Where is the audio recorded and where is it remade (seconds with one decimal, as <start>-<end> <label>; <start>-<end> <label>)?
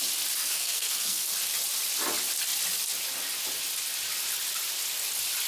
0.0-0.4 recorded; 0.4-1.3 remade; 1.3-5.5 recorded